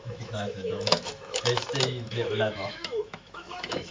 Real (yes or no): no